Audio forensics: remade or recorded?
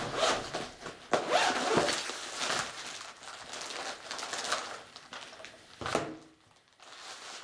recorded